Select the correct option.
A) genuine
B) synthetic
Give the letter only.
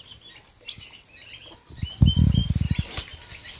A